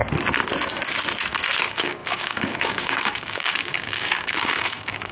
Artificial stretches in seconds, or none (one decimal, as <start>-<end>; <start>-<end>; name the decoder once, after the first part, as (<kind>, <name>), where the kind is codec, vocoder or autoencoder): 1.6-5.1 (codec, DAC)